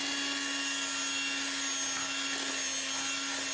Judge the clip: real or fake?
real